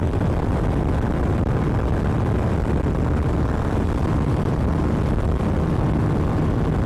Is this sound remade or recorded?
remade